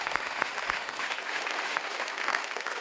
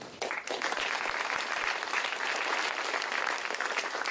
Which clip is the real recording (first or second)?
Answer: second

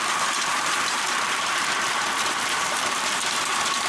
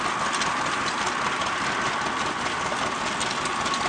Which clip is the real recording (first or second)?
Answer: second